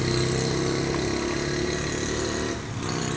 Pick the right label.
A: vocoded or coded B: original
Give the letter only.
B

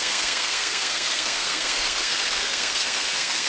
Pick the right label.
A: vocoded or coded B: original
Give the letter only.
A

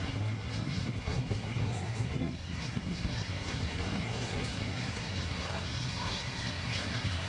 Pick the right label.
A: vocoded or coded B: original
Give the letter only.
A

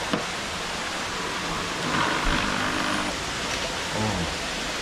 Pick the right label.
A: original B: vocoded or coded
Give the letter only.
A